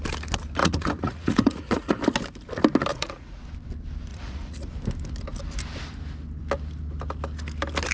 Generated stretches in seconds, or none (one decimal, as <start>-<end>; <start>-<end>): 0.6-2.0; 2.9-3.4; 4.1-4.7